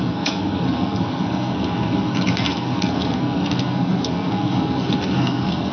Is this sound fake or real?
fake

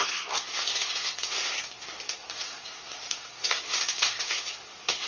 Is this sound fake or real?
fake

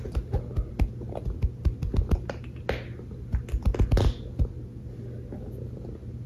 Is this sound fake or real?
real